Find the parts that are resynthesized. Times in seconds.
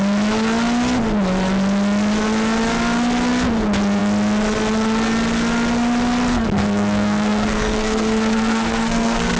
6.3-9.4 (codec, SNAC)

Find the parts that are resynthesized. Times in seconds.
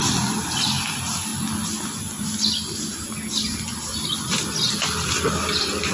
0.0-1.3 (vocoder, BigVGAN v2); 4.7-5.9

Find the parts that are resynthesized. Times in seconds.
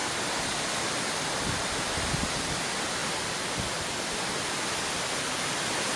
none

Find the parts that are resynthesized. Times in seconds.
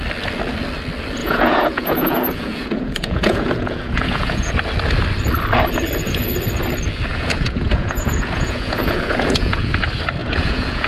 1.2-4.5 (vocoder, Vocos); 7.1-9.7; 10.2-10.9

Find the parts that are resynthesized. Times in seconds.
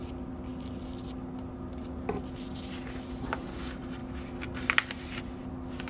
none